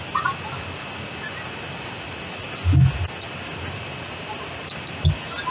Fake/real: real